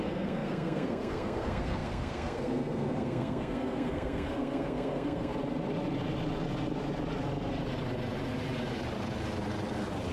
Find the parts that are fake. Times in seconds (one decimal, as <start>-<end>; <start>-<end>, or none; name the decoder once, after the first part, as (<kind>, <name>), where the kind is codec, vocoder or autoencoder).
0.0-5.3 (codec, SNAC)